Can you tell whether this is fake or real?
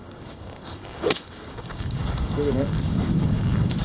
fake